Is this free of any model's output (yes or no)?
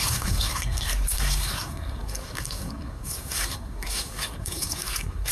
no